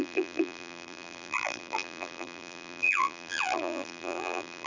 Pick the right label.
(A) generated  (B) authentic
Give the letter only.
A